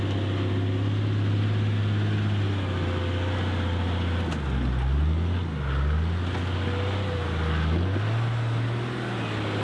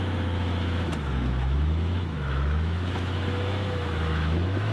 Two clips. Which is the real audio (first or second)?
first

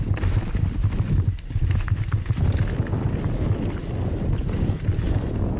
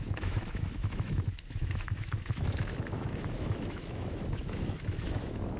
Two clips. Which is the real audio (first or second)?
first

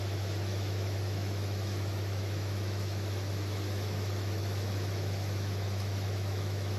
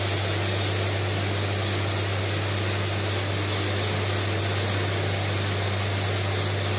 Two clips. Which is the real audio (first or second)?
second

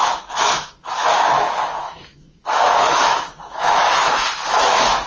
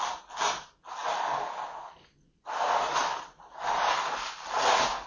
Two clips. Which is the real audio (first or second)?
second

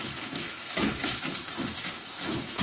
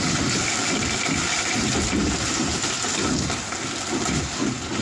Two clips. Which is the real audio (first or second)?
second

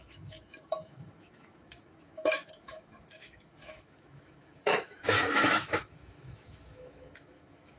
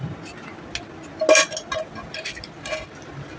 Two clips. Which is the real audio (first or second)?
second